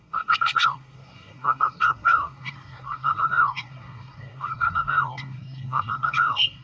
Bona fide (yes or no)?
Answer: no